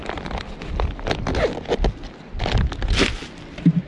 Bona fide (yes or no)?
yes